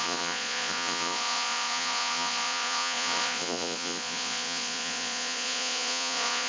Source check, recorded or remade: remade